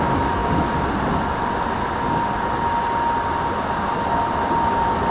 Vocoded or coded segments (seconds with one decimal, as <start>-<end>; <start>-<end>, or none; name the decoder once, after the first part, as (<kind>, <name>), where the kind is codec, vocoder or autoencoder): none